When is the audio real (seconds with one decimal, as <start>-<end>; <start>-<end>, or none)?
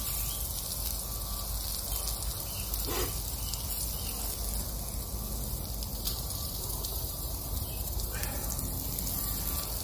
0.0-5.9; 8.5-9.8